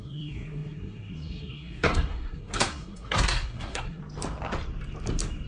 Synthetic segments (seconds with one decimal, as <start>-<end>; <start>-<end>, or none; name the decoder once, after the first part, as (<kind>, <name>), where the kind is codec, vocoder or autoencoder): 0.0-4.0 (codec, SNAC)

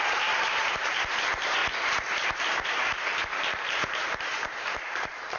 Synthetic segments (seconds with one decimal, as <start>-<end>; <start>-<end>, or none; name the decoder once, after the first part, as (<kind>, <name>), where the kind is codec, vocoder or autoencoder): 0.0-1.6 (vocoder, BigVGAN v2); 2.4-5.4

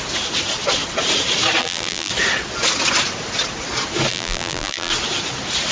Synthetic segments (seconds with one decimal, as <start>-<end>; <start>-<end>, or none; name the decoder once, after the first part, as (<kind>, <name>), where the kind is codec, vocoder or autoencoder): 1.6-2.1 (vocoder, BigVGAN v2); 4.1-4.9